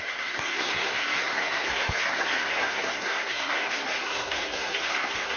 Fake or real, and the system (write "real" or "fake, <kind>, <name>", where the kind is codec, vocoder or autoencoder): fake, codec, SNAC